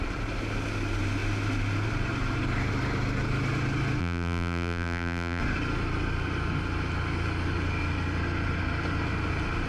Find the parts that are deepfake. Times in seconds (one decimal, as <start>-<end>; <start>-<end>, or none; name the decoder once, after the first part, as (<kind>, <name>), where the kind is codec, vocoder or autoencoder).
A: 4.0-5.4 (vocoder, BigVGAN v2)